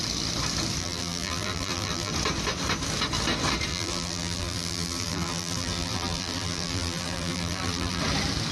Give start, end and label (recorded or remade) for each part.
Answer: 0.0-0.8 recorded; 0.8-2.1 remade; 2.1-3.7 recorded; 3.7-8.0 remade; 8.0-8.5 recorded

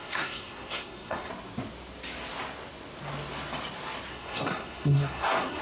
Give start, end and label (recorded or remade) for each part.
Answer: 0.0-1.3 remade; 1.3-4.1 recorded; 4.1-5.6 remade

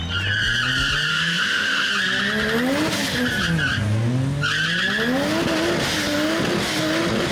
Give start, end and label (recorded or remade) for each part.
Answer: 0.0-1.1 recorded; 1.1-1.9 remade; 1.9-7.3 recorded

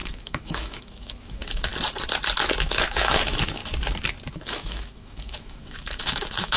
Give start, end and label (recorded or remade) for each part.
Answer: 0.0-1.7 remade; 1.7-2.6 recorded; 2.6-3.6 remade; 3.6-4.3 recorded; 4.3-6.6 remade